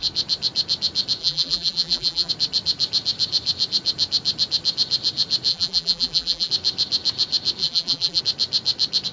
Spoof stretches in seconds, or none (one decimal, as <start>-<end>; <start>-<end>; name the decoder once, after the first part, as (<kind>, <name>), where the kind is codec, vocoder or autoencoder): 1.2-2.3 (vocoder, BigVGAN v2); 5.5-6.5; 7.6-8.2

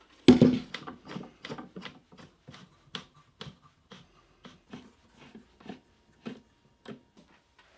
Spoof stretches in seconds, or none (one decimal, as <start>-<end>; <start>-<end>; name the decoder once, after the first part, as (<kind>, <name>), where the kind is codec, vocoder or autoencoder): none

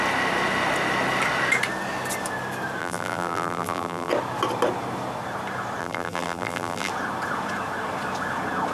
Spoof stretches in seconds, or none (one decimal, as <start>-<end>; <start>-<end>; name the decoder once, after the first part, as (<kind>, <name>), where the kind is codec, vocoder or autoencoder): 2.8-4.1 (vocoder, BigVGAN v2); 5.8-6.9

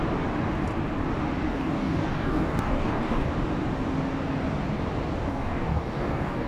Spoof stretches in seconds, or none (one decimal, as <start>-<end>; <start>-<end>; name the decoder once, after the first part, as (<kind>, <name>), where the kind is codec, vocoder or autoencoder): 1.5-3.3 (codec, DAC); 5.3-6.5

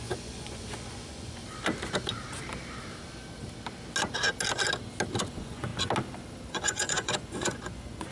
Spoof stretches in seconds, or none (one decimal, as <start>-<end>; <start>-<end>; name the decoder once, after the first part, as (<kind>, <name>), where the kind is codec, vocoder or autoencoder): 0.0-1.4 (vocoder, Vocos); 5.3-5.7; 6.5-8.1

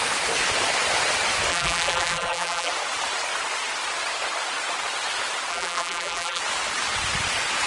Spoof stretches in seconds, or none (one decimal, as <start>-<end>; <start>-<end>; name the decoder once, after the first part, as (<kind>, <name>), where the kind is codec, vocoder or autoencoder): 1.5-2.7 (vocoder, BigVGAN v2); 5.5-6.4

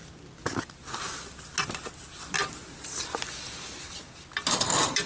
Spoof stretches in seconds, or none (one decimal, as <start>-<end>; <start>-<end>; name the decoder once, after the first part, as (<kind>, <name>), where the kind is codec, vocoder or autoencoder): none